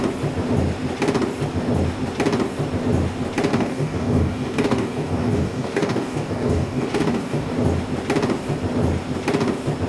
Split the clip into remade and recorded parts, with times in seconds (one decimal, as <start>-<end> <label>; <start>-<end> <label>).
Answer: 0.0-3.5 recorded; 3.5-7.5 remade; 7.5-9.9 recorded